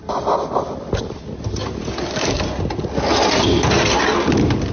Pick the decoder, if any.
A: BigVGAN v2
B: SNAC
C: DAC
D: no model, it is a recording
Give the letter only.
D